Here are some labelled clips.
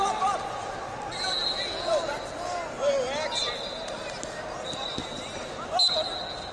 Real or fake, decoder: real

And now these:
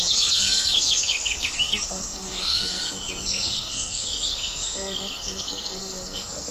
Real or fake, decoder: fake, codec, SNAC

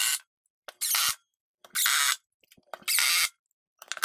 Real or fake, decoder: real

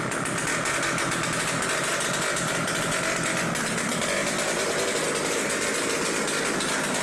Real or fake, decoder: real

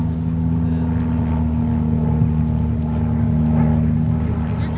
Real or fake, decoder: real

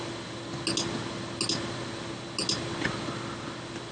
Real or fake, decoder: real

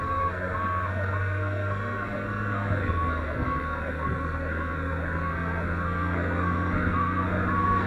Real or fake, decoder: fake, codec, SNAC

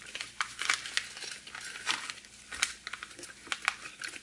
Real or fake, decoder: real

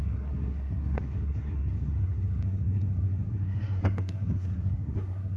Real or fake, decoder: fake, codec, SNAC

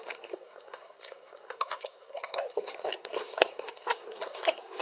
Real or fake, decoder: fake, codec, SNAC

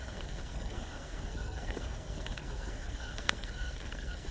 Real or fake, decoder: fake, codec, SNAC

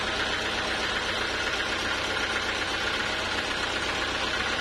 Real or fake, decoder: real